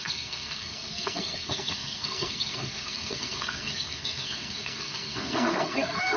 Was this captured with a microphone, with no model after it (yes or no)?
no